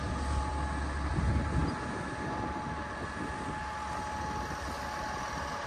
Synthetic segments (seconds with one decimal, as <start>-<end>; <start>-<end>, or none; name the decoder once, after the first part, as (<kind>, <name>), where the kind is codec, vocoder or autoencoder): none